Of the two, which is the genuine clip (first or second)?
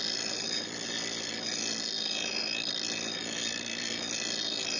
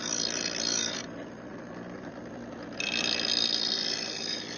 first